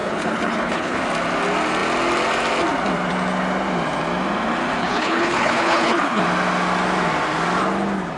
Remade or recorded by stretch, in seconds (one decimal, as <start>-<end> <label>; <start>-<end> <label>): 0.0-1.0 remade; 1.0-4.8 recorded; 4.8-6.2 remade; 6.2-8.2 recorded